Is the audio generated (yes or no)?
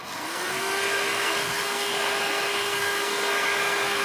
yes